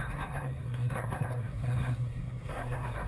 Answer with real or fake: fake